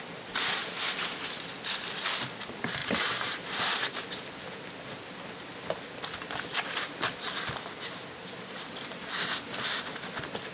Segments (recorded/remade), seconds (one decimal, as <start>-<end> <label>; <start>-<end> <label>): 0.0-0.6 recorded; 0.6-1.7 remade; 1.7-2.8 recorded; 2.8-3.9 remade; 3.9-10.5 recorded